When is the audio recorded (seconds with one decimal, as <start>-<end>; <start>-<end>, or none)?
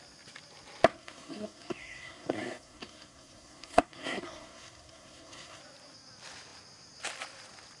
0.0-0.9; 5.6-7.8